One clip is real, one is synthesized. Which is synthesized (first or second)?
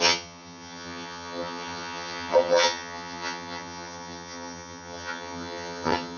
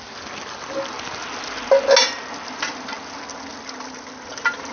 first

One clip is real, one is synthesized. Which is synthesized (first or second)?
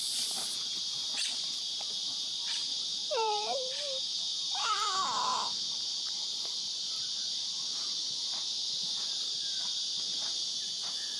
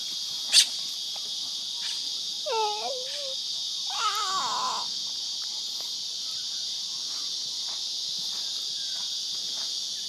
first